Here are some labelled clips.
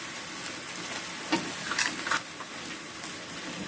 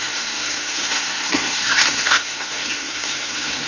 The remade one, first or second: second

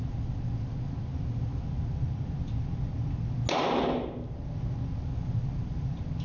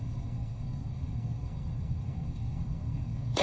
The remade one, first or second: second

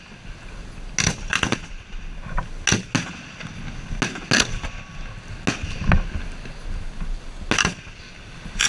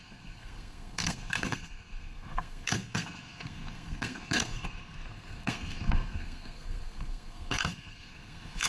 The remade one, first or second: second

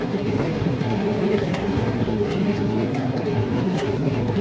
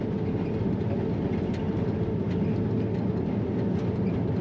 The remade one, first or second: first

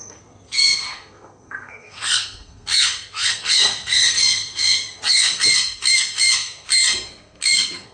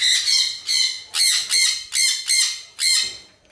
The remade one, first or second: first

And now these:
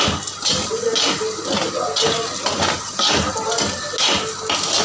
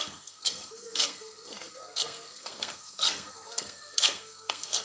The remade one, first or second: second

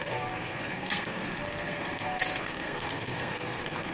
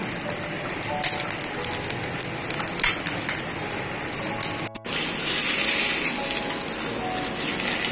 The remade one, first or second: first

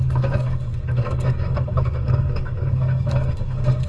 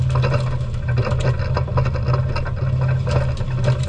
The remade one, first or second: first